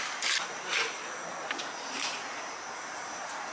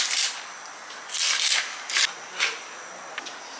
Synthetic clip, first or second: first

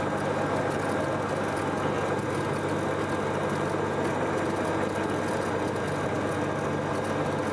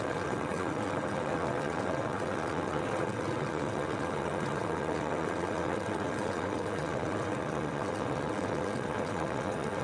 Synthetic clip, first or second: second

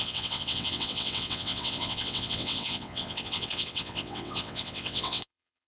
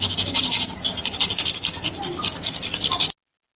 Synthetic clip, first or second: first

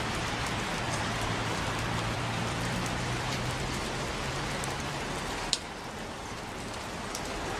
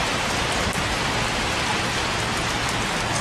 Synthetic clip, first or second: first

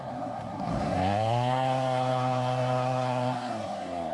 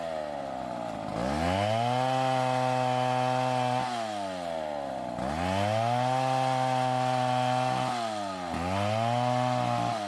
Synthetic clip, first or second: first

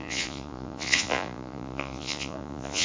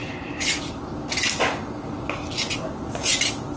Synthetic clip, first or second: first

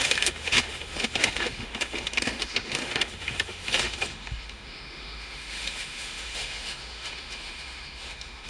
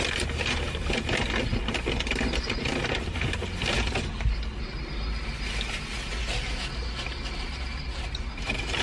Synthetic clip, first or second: first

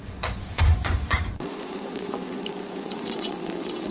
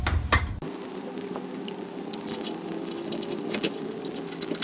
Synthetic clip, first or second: first